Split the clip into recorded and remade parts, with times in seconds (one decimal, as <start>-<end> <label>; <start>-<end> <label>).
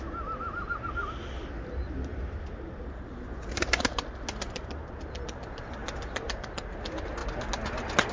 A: 0.0-8.1 recorded